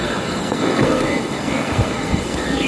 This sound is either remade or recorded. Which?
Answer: remade